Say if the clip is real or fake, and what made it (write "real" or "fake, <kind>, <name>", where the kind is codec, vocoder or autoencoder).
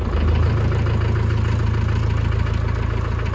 real